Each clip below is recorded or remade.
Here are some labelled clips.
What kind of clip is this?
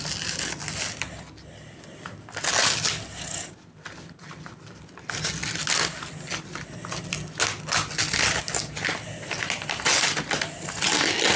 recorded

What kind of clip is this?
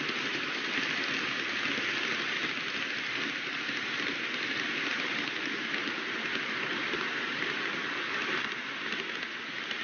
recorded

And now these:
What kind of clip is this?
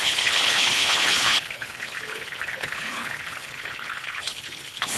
remade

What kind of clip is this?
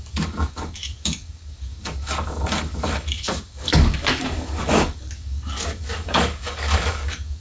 remade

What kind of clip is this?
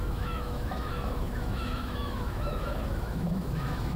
remade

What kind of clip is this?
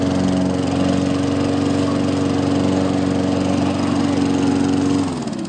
recorded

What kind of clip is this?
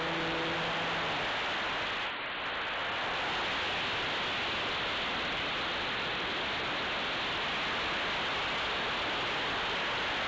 recorded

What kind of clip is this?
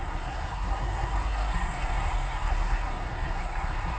remade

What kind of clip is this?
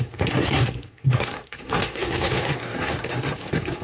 remade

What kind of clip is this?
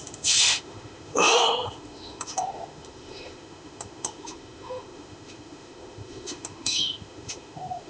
remade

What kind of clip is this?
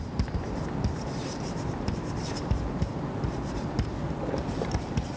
remade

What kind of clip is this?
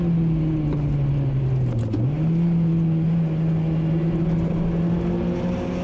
recorded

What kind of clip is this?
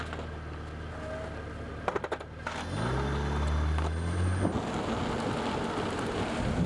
recorded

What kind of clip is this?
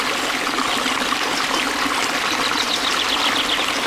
recorded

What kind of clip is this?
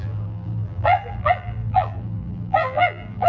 remade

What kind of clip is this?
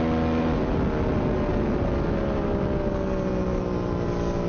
recorded